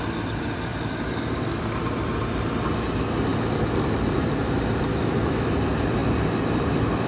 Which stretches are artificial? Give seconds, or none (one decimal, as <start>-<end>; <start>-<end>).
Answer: 4.9-5.5